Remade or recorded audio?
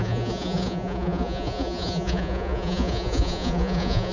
remade